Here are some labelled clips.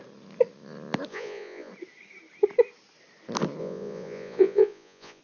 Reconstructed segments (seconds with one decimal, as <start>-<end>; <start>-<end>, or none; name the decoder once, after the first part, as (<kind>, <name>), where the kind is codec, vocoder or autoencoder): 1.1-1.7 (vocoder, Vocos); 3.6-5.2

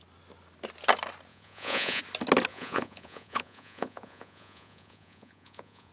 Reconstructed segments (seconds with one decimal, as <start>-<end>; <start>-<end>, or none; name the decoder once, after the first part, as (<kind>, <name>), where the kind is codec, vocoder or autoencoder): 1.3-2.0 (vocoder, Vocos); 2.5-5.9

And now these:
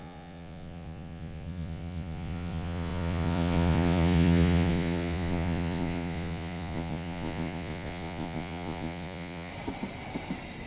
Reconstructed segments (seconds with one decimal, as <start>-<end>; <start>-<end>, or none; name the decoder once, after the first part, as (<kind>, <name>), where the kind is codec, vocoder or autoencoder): 0.0-9.5 (vocoder, Vocos)

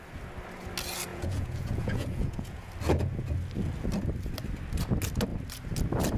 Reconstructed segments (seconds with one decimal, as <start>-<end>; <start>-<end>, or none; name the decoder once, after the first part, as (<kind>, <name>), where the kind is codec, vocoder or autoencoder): 1.1-2.7 (vocoder, Vocos)